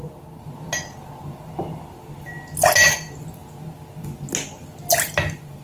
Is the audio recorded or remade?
recorded